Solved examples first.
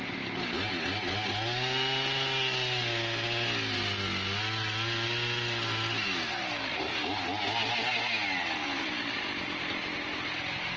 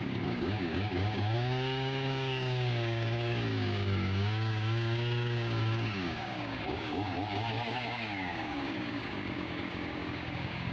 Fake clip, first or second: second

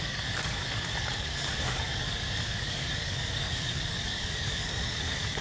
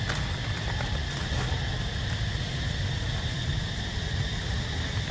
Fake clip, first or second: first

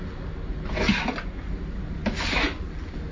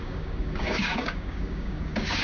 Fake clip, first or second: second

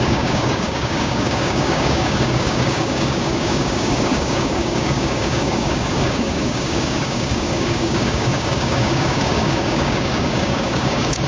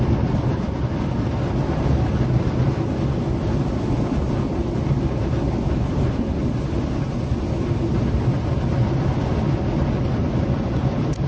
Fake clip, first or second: first